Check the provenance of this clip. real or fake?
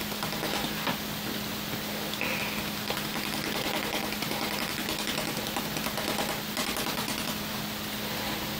real